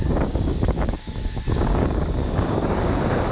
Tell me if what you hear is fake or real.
fake